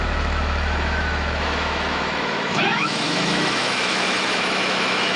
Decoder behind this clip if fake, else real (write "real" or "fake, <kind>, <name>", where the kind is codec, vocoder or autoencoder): fake, autoencoder, DAC-VAE